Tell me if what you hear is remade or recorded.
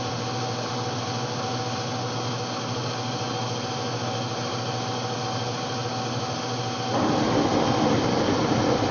recorded